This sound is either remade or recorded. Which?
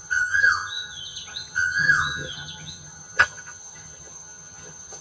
remade